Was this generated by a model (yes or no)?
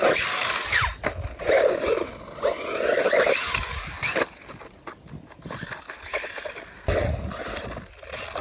no